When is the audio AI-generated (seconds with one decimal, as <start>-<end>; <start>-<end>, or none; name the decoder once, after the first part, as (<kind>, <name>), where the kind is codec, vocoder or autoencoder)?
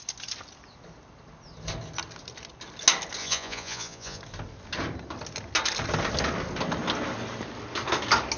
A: 3.2-4.2 (vocoder, Vocos)